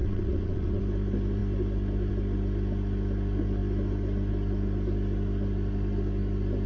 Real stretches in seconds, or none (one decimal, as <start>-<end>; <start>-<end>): 0.8-6.7